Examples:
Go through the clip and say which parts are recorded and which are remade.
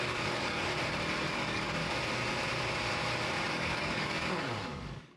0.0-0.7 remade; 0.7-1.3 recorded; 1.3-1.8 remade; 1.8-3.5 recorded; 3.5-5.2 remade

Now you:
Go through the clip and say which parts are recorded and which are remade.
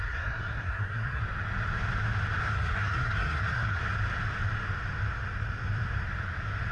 0.0-1.2 remade; 1.2-2.4 recorded; 2.4-3.8 remade; 3.8-6.7 recorded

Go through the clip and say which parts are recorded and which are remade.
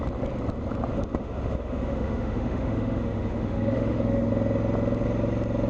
0.0-0.9 recorded; 0.9-4.3 remade; 4.3-5.7 recorded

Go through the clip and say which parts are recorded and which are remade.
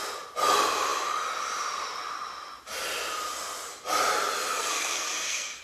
0.0-4.6 recorded; 4.6-5.6 remade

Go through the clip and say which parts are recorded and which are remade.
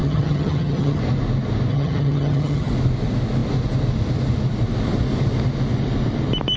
0.0-1.0 remade; 1.0-1.7 recorded; 1.7-2.7 remade; 2.7-6.6 recorded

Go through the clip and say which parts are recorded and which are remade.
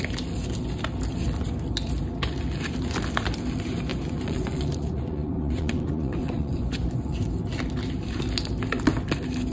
0.0-3.9 recorded; 3.9-7.3 remade; 7.3-9.5 recorded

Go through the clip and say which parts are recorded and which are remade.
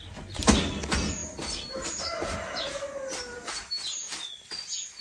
0.0-5.0 recorded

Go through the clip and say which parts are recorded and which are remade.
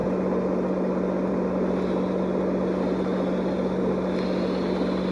0.0-5.1 recorded